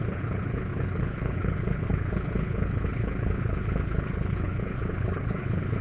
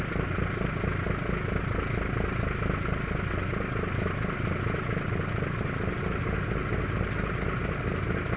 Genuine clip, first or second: second